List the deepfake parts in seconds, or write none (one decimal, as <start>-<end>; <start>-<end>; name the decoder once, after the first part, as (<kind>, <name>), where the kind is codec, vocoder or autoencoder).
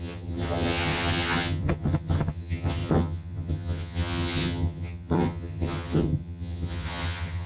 0.0-7.5 (vocoder, HiFi-GAN)